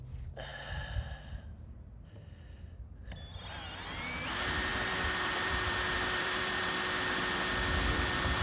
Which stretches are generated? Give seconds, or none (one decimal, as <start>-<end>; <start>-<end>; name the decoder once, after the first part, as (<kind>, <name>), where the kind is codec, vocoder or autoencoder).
4.7-6.6 (vocoder, BigVGAN v2)